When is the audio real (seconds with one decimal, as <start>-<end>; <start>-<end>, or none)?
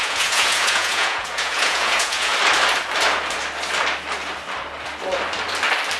2.3-6.0